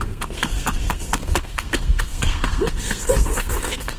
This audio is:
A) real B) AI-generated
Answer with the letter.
B